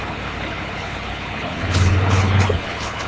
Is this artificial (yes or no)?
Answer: yes